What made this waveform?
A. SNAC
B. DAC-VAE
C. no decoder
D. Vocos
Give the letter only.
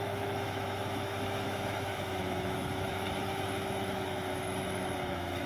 B